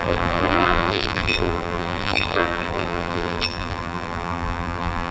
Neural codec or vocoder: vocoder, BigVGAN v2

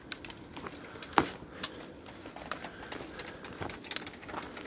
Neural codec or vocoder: vocoder, BigVGAN v2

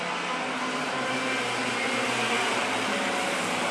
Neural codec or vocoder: none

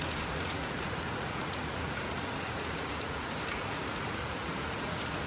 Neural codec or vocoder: vocoder, Vocos